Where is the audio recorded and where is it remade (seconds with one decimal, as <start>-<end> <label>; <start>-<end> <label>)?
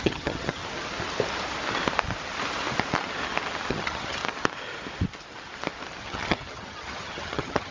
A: 0.0-0.6 remade; 0.6-3.7 recorded; 3.7-4.2 remade; 4.2-6.0 recorded; 6.0-7.7 remade